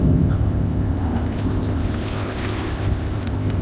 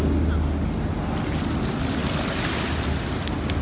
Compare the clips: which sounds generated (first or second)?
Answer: first